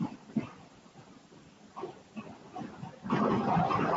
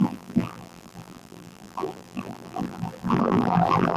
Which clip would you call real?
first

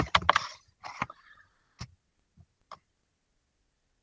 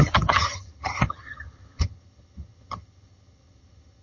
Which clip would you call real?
first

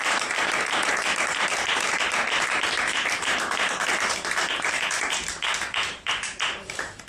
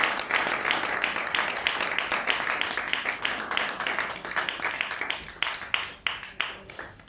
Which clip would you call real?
second